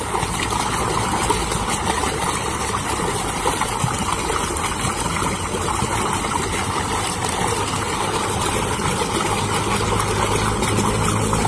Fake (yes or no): no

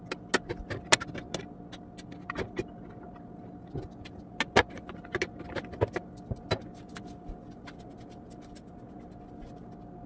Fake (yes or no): no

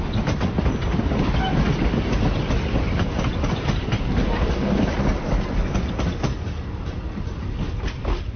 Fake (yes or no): no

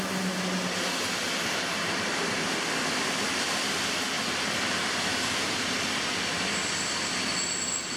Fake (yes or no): no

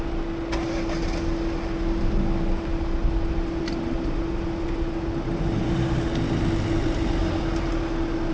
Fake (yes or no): no